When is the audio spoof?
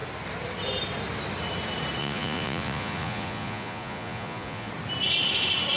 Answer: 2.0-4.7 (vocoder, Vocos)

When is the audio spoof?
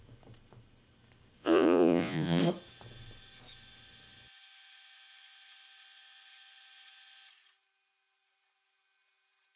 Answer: 1.4-2.4 (vocoder, Vocos)